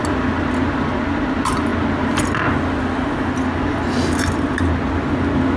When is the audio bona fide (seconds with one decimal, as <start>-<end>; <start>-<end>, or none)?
0.0-5.6